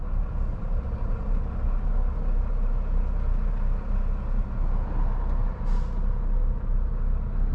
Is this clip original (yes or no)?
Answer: yes